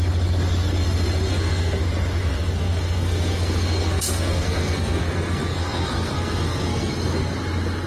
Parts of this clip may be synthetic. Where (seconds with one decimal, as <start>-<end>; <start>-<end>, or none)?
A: 1.3-1.8; 2.2-6.9